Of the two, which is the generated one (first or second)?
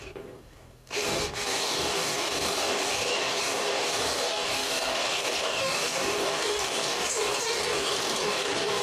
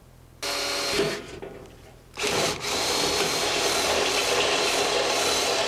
first